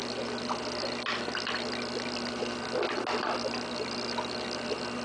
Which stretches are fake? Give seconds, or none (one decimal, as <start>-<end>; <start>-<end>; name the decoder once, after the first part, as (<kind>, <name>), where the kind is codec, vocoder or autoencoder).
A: none

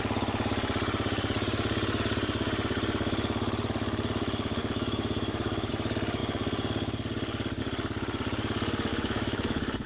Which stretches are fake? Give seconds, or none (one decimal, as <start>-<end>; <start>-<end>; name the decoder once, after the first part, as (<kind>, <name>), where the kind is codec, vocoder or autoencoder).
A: 4.6-5.7 (autoencoder, DAC-VAE); 8.9-9.9

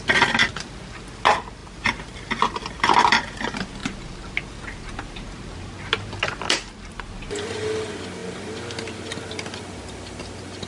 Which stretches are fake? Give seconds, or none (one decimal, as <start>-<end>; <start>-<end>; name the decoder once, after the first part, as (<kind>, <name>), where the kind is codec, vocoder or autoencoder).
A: 1.6-2.8 (vocoder, BigVGAN v2)